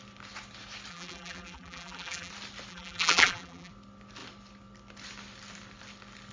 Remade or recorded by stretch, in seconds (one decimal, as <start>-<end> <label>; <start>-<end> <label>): 0.0-0.9 recorded; 0.9-2.3 remade; 2.3-2.7 recorded; 2.7-3.7 remade; 3.7-6.3 recorded